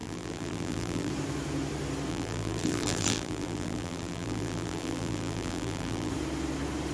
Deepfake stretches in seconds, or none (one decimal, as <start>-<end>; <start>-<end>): 0.0-1.1; 2.1-6.1